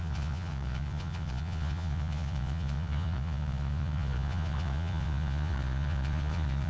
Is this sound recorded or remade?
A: remade